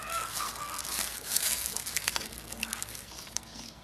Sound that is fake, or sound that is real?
fake